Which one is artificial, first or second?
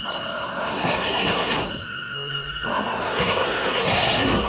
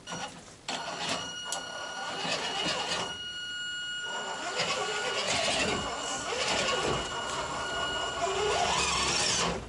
first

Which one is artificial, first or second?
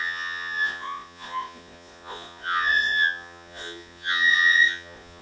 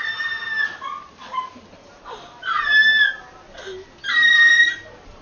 first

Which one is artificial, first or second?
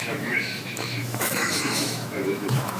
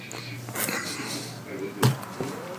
first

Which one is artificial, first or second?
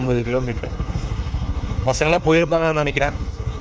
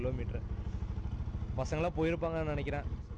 first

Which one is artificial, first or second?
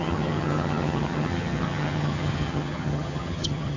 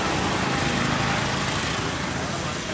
first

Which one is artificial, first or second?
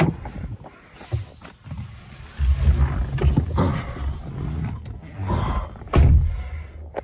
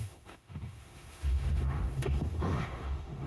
second